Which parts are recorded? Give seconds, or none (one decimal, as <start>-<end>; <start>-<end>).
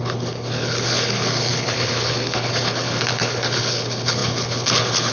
none